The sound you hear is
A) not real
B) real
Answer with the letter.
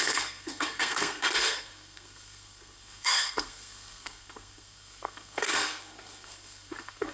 A